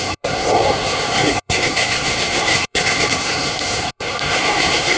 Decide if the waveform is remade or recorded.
remade